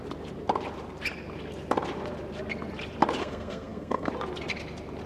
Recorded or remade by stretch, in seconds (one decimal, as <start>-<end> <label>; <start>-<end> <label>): 0.0-3.2 recorded; 3.2-4.1 remade; 4.1-5.1 recorded